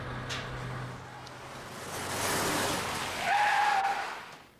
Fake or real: real